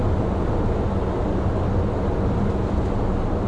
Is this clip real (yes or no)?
yes